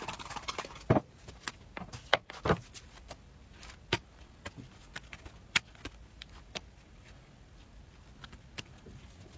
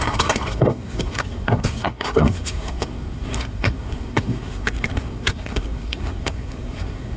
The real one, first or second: first